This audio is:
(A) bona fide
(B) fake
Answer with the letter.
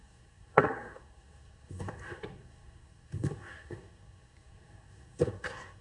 B